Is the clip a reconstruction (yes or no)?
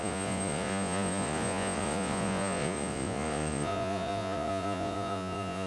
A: yes